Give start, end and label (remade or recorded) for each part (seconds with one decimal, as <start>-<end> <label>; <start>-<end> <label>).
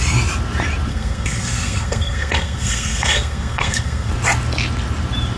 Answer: 0.0-0.9 recorded; 0.9-4.1 remade; 4.1-5.4 recorded